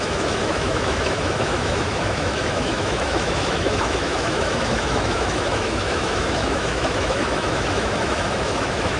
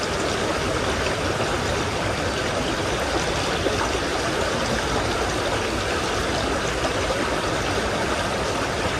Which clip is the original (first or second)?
second